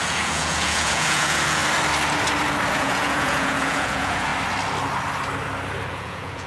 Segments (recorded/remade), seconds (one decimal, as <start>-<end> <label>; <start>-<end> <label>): 0.0-1.6 remade; 1.6-2.7 recorded; 2.7-4.3 remade; 4.3-5.9 recorded; 5.9-6.5 remade